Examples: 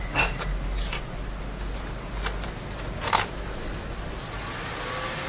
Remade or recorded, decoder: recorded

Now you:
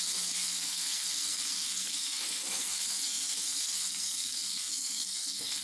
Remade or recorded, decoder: remade, codec, SNAC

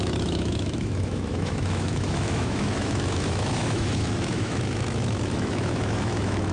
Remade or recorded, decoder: remade, autoencoder, DAC-VAE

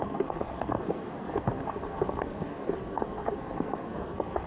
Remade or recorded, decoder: remade, codec, SNAC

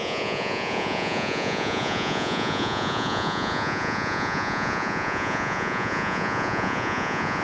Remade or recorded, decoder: remade, vocoder, Vocos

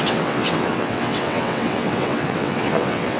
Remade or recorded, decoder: remade, vocoder, WaveNeXt